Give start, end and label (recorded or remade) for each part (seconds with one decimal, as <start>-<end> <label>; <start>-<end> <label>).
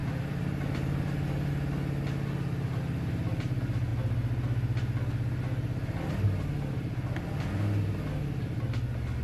0.0-1.5 remade; 1.5-9.2 recorded